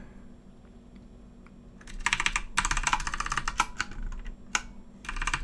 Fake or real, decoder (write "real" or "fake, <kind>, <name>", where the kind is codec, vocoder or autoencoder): real